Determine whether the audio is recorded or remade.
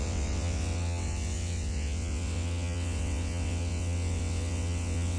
remade